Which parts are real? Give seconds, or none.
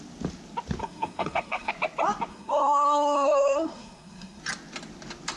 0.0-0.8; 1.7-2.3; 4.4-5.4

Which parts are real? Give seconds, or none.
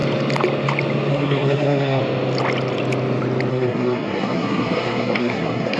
0.0-1.1; 2.0-3.5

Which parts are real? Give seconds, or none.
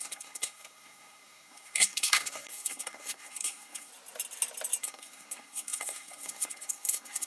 3.9-4.8